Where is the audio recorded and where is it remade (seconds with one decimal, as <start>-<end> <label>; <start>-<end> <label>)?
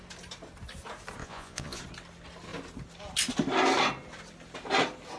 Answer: 0.0-1.2 recorded; 1.2-1.8 remade; 1.8-5.2 recorded